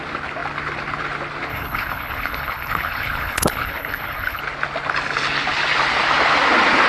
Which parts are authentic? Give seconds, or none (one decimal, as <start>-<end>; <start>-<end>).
0.0-1.5; 4.4-6.9